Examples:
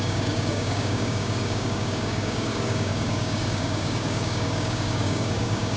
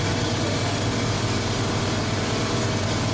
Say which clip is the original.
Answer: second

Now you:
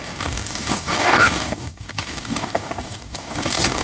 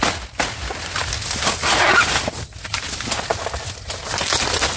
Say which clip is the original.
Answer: second